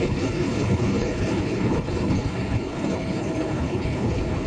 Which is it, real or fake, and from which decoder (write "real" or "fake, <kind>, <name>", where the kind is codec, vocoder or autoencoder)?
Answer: fake, codec, HILCodec